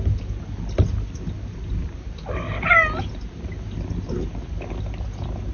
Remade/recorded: recorded